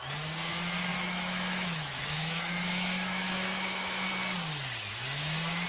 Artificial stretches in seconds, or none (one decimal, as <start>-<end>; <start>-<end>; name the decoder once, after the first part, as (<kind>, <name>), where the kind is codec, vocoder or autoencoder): 0.9-4.1 (autoencoder, DAC-VAE)

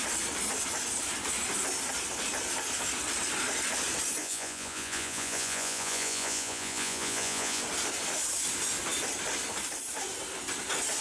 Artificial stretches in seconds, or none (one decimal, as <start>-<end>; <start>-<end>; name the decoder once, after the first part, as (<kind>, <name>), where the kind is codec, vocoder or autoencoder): 4.2-7.6 (vocoder, Vocos)

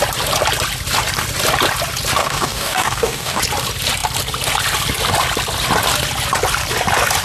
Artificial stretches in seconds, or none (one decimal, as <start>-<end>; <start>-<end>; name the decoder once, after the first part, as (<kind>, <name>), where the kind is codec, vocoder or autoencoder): 2.2-3.4 (codec, DAC)